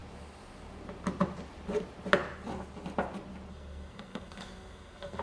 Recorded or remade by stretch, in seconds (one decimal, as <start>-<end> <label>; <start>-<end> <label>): 0.0-3.5 recorded; 3.5-5.2 remade